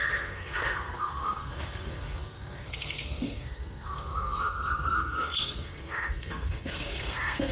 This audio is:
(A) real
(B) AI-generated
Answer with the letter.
B